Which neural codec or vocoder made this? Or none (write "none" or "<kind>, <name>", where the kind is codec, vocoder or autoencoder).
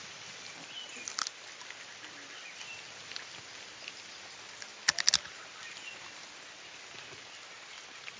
none